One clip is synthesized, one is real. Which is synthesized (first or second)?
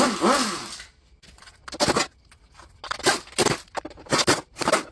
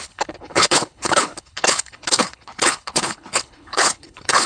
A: second